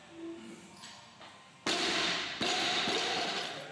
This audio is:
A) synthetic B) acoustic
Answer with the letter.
B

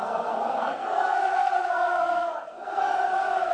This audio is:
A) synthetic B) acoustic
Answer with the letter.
A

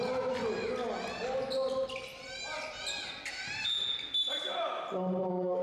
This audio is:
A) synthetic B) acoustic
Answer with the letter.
B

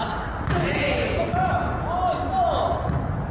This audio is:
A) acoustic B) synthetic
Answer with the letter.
A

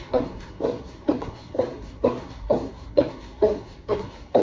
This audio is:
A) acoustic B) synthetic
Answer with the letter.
B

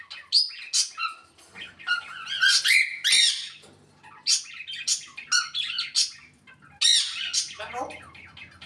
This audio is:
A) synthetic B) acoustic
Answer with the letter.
B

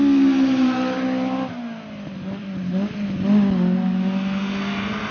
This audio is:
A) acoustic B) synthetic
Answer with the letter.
A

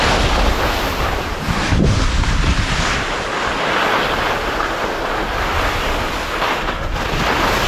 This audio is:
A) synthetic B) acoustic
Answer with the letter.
B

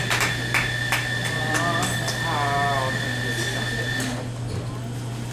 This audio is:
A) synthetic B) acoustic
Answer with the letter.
B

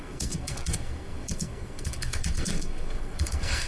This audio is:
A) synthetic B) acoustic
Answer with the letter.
A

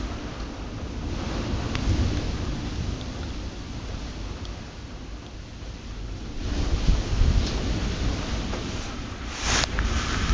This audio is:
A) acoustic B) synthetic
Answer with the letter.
A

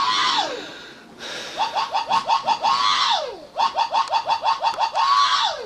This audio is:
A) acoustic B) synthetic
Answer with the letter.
A